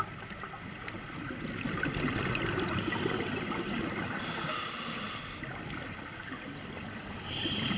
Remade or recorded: recorded